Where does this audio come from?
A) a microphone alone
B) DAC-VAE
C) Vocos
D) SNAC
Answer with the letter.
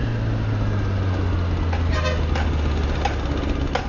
A